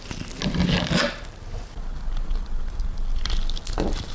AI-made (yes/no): no